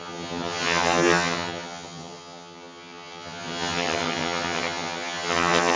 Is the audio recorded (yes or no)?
no